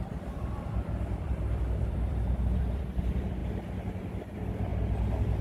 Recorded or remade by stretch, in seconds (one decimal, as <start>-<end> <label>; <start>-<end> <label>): 0.0-3.4 remade; 3.4-4.3 recorded; 4.3-4.7 remade; 4.7-5.4 recorded